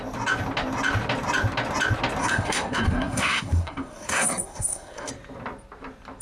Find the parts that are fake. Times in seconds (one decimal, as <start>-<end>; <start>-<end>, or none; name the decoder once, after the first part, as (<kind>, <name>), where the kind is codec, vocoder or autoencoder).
2.2-5.1 (codec, SNAC)